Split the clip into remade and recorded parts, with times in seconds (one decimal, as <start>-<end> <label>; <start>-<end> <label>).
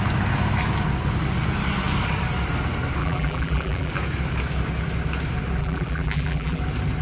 0.0-3.0 recorded; 3.0-3.9 remade; 3.9-5.6 recorded; 5.6-6.6 remade; 6.6-7.0 recorded